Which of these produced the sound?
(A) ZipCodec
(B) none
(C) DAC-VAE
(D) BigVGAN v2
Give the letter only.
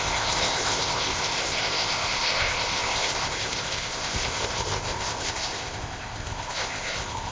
A